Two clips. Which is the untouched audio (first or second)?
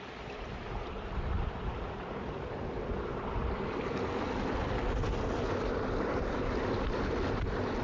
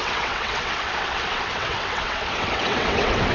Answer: first